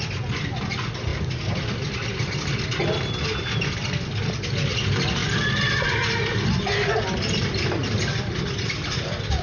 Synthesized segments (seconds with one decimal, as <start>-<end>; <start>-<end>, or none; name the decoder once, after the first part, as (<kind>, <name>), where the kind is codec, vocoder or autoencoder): 1.1-2.1 (vocoder, BigVGAN v2); 5.2-5.9; 7.8-8.4